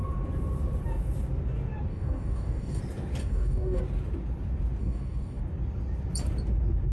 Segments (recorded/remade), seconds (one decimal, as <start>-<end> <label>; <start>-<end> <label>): 0.0-1.9 recorded; 1.9-2.8 remade; 2.8-3.2 recorded; 3.2-3.8 remade; 3.8-4.8 recorded; 4.8-5.4 remade; 5.4-6.9 recorded